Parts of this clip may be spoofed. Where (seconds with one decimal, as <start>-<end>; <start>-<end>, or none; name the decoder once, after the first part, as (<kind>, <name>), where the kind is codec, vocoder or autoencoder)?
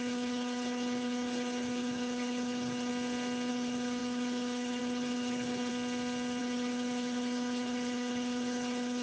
0.0-2.9 (codec, HILCodec); 3.5-5.7; 6.4-9.0